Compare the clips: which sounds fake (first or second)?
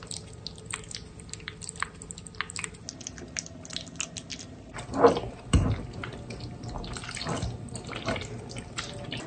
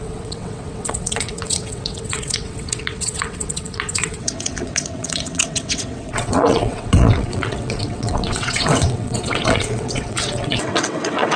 second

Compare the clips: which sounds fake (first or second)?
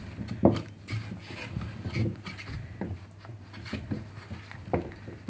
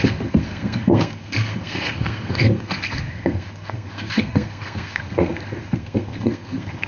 second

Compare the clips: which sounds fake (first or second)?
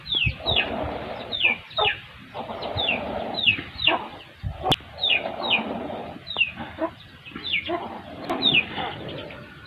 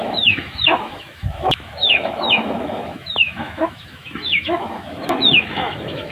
second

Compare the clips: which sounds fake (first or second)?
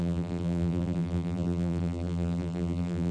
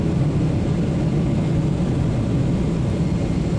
first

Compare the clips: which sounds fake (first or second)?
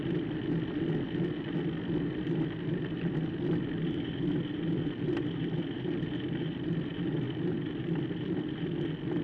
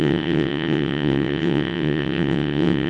second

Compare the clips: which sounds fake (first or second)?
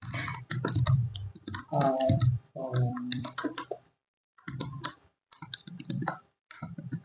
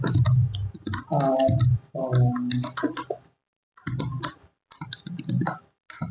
first